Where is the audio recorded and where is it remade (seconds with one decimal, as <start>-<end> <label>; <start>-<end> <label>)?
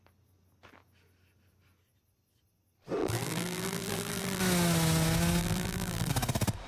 0.0-3.0 recorded; 3.0-4.4 remade; 4.4-5.4 recorded; 5.4-6.1 remade; 6.1-6.7 recorded